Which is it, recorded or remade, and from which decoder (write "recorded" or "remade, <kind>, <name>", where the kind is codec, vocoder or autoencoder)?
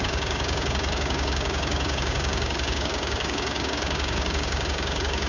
remade, codec, DAC